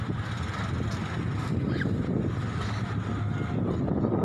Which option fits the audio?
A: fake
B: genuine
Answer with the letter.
B